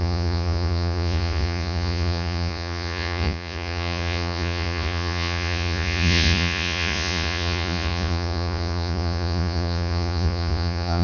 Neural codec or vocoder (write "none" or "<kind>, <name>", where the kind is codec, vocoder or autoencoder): vocoder, Vocos